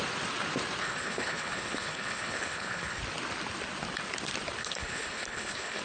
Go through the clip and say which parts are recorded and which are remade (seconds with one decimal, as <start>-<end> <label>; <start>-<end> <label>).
0.0-0.8 recorded; 0.8-3.0 remade; 3.0-4.6 recorded; 4.6-5.8 remade